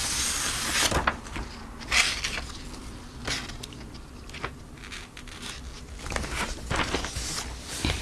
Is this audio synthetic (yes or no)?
no